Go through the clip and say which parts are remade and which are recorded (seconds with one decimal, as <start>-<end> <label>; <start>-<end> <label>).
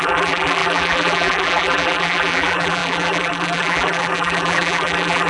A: 0.0-5.3 remade